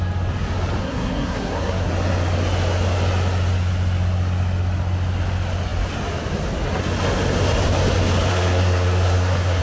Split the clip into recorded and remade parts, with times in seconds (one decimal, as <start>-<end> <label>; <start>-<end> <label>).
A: 0.0-0.8 recorded; 0.8-1.9 remade; 1.9-8.3 recorded; 8.3-9.6 remade